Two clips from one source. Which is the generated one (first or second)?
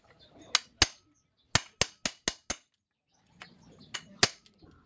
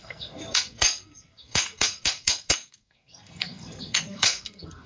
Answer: second